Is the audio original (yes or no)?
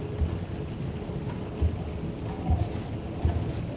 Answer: yes